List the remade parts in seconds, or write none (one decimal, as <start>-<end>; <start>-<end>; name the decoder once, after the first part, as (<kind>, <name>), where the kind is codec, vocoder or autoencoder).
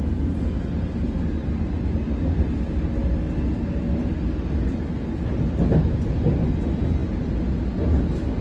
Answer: none